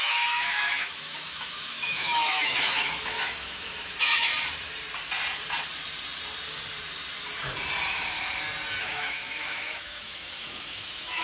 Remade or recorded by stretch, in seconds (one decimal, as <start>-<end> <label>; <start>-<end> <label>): 0.0-4.3 remade; 4.3-8.8 recorded; 8.8-11.2 remade